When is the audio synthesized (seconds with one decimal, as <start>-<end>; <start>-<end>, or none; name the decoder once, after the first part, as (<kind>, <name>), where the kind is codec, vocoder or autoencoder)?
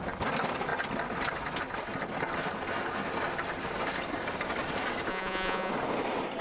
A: 5.1-5.7 (vocoder, Vocos)